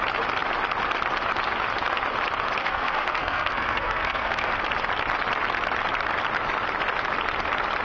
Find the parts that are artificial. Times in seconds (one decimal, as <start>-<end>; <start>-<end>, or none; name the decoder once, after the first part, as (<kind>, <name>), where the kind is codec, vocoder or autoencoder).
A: 2.6-4.6 (codec, SNAC)